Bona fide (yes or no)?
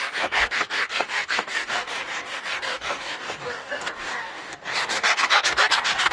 no